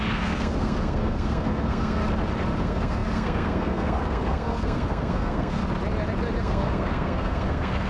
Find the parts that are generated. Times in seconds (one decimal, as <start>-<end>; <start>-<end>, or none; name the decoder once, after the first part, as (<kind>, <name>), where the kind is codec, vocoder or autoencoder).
0.0-2.0 (codec, SNAC); 2.6-5.6; 6.4-7.9